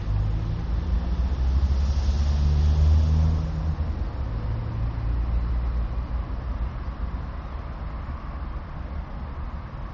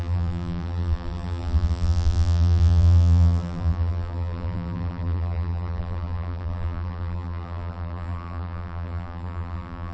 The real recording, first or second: first